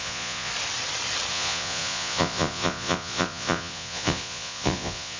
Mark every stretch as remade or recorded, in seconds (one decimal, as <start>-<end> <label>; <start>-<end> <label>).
0.0-0.5 remade; 0.5-1.3 recorded; 1.3-5.2 remade